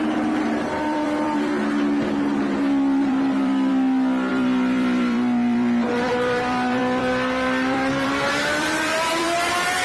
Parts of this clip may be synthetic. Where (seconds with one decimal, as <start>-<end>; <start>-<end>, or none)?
0.0-1.5; 2.2-3.7; 4.3-9.8